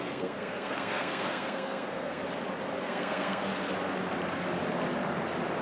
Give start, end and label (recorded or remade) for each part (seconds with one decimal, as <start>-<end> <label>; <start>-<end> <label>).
0.0-2.2 remade; 2.2-2.8 recorded; 2.8-3.5 remade; 3.5-5.6 recorded